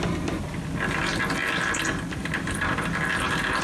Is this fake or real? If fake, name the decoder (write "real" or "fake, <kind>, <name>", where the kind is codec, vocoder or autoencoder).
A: real